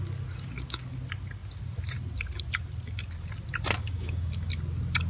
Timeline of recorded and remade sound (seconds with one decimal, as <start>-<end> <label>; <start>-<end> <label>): 0.0-3.8 recorded; 3.8-4.5 remade; 4.5-5.1 recorded